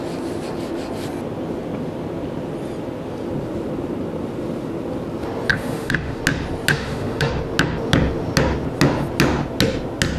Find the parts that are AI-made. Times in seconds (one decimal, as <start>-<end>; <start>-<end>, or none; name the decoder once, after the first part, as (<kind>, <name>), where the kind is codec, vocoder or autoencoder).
5.5-6.2 (autoencoder, DAC-VAE); 6.7-7.3